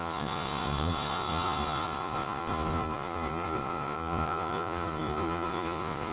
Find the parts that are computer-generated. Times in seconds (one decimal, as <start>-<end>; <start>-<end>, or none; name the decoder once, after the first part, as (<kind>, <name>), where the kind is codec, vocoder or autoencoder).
0.0-6.1 (vocoder, Vocos)